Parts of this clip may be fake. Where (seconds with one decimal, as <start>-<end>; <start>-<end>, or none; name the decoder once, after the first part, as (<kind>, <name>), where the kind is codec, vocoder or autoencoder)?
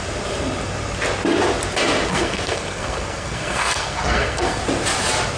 2.1-4.6 (codec, SNAC)